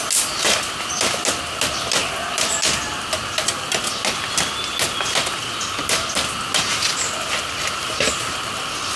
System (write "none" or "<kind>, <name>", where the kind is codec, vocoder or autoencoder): none